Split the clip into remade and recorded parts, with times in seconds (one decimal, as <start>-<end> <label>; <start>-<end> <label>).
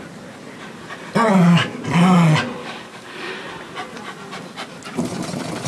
0.0-2.6 recorded; 2.6-3.3 remade; 3.3-5.7 recorded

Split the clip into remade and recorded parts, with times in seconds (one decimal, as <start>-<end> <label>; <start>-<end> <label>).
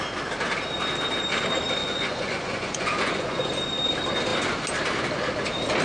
0.0-1.8 recorded; 1.8-3.5 remade; 3.5-5.8 recorded